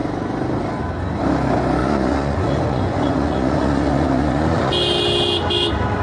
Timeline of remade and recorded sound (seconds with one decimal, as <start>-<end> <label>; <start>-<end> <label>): 0.0-1.8 recorded; 1.8-4.7 remade; 4.7-6.0 recorded